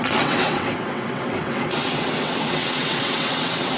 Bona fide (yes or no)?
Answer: no